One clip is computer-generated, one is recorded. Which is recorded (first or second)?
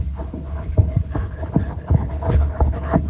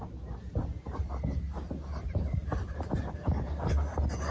second